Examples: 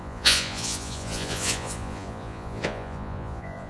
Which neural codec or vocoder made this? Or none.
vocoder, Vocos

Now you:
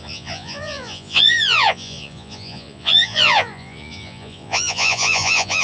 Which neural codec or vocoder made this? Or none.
vocoder, Vocos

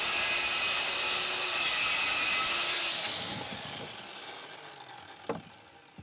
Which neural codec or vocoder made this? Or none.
none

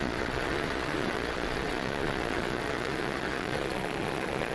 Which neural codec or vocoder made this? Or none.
vocoder, Vocos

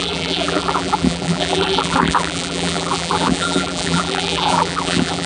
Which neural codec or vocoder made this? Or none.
vocoder, BigVGAN v2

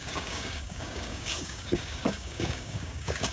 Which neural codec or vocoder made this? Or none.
codec, DAC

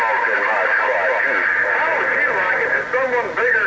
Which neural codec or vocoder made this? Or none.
none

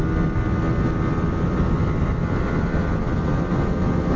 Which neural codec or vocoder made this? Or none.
none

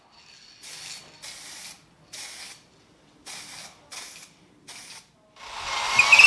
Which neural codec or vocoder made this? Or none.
none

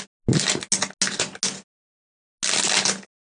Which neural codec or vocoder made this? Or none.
none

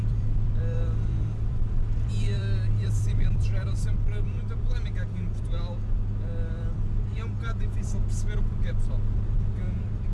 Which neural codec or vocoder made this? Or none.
vocoder, BigVGAN v2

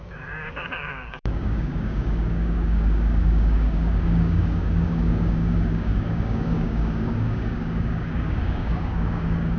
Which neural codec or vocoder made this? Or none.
codec, DAC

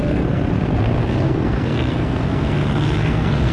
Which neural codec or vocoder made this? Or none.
codec, SNAC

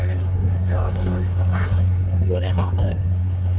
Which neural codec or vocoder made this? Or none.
codec, SNAC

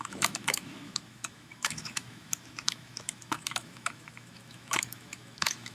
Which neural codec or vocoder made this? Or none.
autoencoder, DAC-VAE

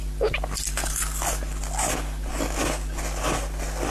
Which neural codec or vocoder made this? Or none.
none